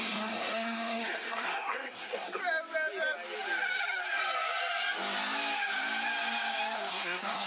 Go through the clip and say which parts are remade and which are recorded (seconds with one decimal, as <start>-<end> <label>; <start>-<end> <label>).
0.0-2.4 remade; 2.4-6.9 recorded; 6.9-7.5 remade